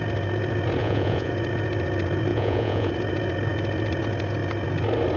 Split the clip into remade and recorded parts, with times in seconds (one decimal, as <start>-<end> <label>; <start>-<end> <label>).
0.0-0.8 recorded; 0.8-1.3 remade; 1.3-2.3 recorded; 2.3-2.9 remade; 2.9-5.2 recorded